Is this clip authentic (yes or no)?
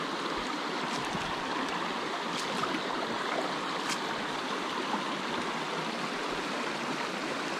yes